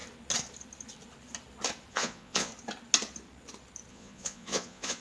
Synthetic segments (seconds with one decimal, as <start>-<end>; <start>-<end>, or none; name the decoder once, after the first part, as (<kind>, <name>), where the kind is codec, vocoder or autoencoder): 1.9-2.5 (vocoder, Vocos); 3.9-5.0